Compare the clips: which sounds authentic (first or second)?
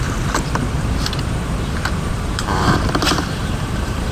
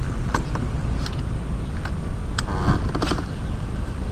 second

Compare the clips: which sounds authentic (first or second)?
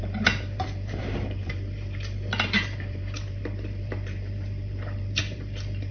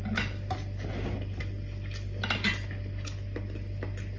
second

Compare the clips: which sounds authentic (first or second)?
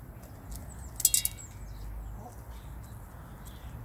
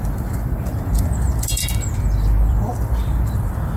first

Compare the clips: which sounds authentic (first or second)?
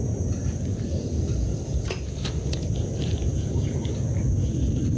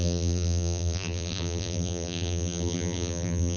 first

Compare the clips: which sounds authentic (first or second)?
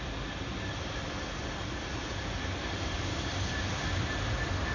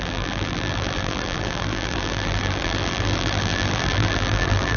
first